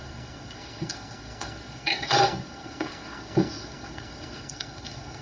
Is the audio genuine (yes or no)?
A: no